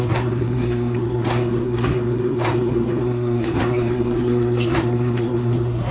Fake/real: fake